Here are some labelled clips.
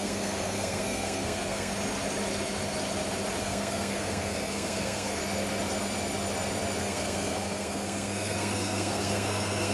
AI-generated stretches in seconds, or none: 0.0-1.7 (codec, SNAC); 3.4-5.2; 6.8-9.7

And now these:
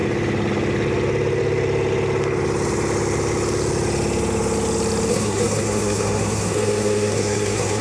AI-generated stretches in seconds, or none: 5.1-7.8 (codec, SNAC)

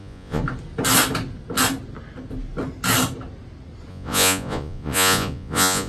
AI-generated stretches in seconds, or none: 0.0-0.4 (vocoder, Vocos); 3.9-5.9

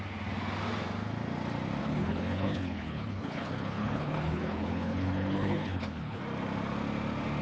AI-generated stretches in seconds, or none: 1.8-6.2 (codec, HILCodec)

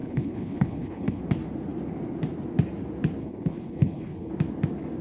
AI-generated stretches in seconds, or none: 0.0-1.2 (codec, HILCodec); 3.2-4.3

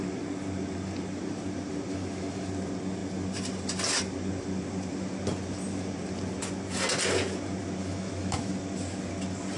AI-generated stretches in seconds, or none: 1.9-2.5 (autoencoder, DAC-VAE); 7.8-8.5

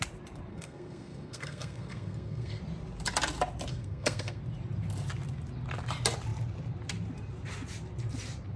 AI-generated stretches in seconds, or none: 0.5-2.6 (codec, SNAC); 3.7-4.4

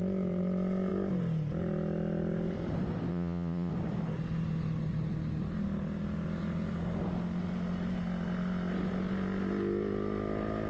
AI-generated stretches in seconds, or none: 3.1-3.7 (vocoder, Vocos)